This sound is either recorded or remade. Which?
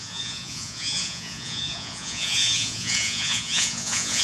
remade